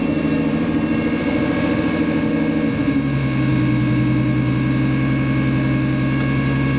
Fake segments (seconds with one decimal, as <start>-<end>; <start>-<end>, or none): 0.0-2.3